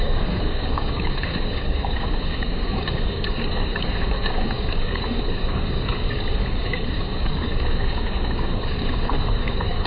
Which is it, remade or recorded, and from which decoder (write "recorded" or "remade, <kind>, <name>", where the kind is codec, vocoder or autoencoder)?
remade, codec, DAC